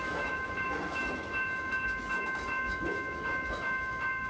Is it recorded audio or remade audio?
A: remade